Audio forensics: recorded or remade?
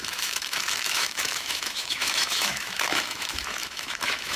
remade